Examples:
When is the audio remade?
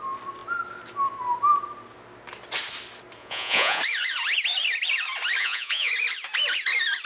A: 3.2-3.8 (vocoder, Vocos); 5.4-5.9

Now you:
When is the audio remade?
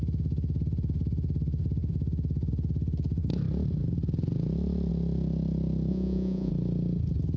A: 5.9-6.5 (vocoder, Vocos)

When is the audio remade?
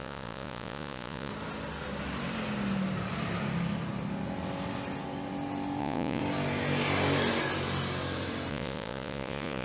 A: 0.0-1.3 (vocoder, Vocos); 5.8-6.2; 8.5-9.6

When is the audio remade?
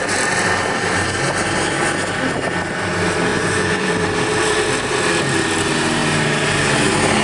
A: 3.3-3.9 (vocoder, Vocos)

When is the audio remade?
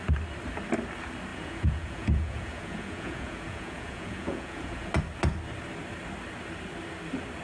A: 1.3-4.9 (vocoder, Vocos)